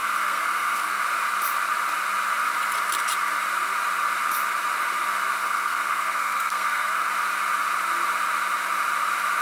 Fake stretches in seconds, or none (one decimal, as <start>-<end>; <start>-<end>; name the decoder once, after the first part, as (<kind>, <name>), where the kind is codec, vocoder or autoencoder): 0.0-1.0 (codec, SNAC); 5.4-7.1